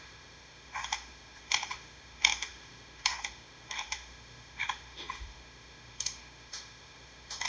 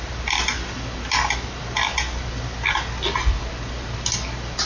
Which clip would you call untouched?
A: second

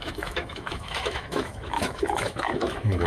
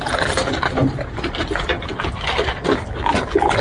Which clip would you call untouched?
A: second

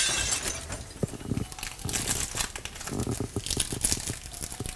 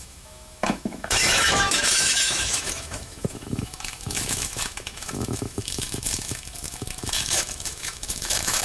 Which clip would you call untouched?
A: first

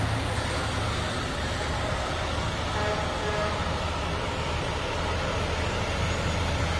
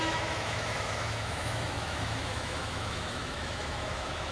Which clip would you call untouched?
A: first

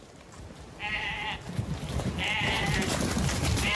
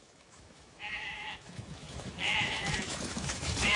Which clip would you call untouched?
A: first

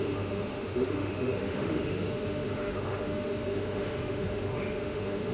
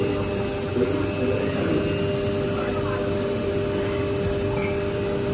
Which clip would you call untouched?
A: second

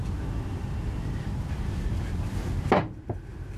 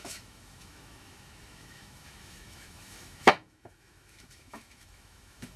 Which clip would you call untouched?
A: first